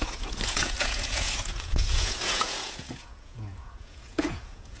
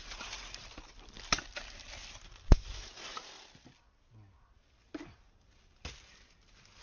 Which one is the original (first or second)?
second